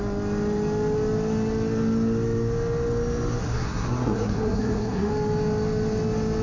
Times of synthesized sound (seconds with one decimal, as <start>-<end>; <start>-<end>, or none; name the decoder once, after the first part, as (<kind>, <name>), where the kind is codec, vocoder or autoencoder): 3.4-5.1 (codec, SNAC)